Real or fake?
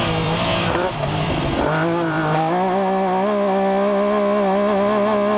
fake